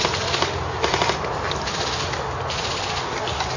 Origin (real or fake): real